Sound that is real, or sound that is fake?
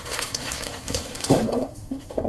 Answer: fake